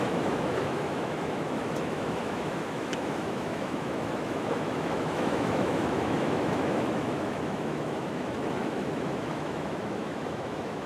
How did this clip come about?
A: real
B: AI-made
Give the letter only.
B